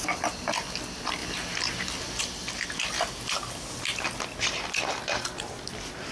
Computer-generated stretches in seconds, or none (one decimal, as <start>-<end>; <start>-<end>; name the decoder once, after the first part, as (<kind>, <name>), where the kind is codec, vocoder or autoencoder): none